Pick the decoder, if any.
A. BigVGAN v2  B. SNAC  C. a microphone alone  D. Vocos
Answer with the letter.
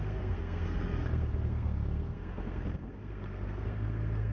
B